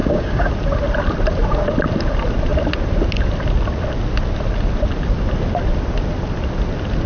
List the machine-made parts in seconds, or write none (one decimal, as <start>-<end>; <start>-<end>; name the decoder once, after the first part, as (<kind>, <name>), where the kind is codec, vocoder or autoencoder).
0.0-0.5 (codec, DAC)